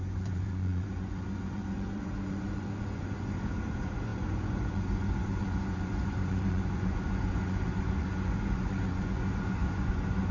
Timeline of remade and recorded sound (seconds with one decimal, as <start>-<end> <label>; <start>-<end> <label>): 0.0-10.3 remade